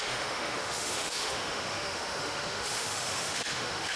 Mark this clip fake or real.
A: fake